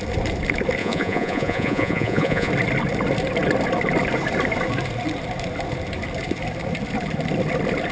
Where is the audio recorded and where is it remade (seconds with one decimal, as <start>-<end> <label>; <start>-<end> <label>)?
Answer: 0.0-0.8 recorded; 0.8-2.5 remade; 2.5-7.9 recorded

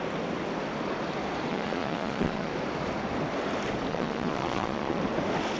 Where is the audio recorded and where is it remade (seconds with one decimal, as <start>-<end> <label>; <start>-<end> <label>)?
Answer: 0.0-1.5 recorded; 1.5-2.5 remade; 2.5-3.9 recorded; 3.9-5.0 remade; 5.0-5.6 recorded

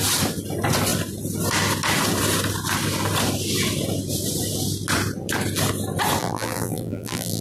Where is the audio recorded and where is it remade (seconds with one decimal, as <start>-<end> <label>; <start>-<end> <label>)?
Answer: 0.0-6.2 recorded; 6.2-7.4 remade

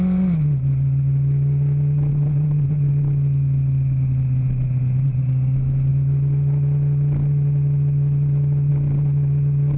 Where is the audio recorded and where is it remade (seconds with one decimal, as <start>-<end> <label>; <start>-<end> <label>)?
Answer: 0.0-2.1 recorded; 2.1-2.9 remade; 2.9-9.8 recorded

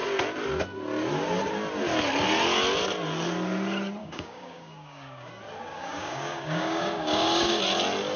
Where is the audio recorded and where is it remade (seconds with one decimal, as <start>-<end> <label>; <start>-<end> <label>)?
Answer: 0.0-4.0 recorded; 4.0-5.3 remade; 5.3-5.7 recorded; 5.7-7.6 remade; 7.6-8.2 recorded